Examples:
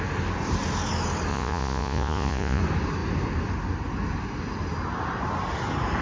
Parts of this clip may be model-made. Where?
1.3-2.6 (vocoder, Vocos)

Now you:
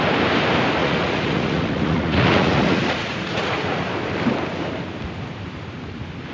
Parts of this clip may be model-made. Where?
0.8-3.9 (vocoder, Vocos)

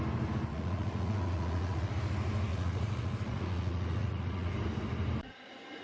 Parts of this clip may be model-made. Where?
0.5-1.9 (vocoder, Vocos); 2.5-4.5

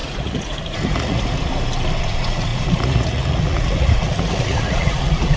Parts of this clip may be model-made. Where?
0.0-1.5 (vocoder, Vocos); 2.0-5.4

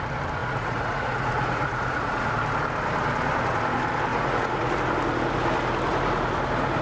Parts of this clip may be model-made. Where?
0.4-2.3 (vocoder, Vocos); 4.1-4.8